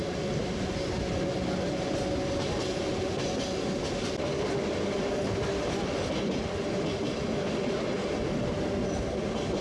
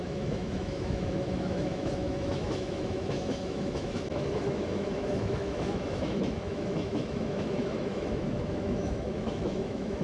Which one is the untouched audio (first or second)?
first